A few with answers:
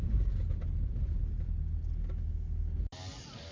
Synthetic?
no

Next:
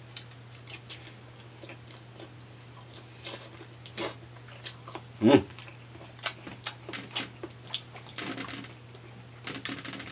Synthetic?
no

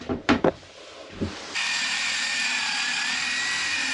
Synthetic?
yes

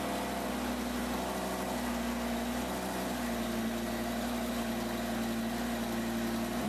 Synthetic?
no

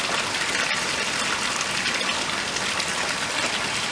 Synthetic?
no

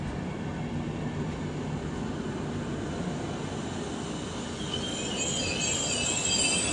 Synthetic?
no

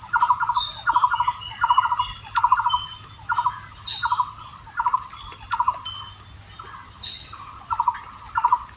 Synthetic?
no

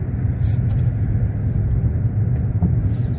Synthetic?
no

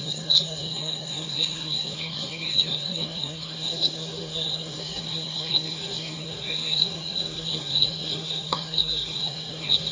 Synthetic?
yes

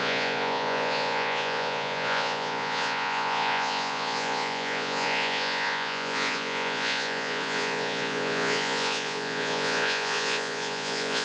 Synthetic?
yes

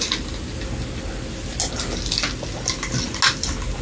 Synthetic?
no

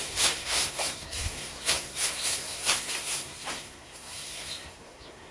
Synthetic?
yes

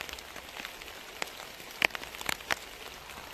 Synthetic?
no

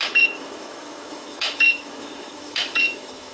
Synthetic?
yes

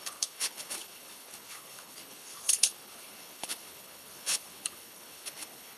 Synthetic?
yes